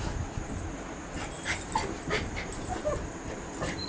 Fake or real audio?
real